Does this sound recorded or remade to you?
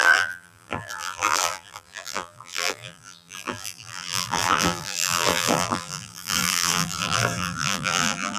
remade